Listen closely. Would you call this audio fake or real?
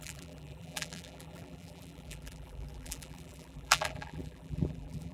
fake